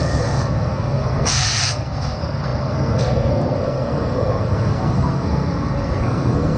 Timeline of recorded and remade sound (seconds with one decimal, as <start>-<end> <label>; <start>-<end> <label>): 0.0-6.6 remade